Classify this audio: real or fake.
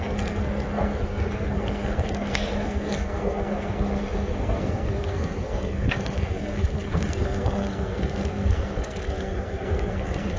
fake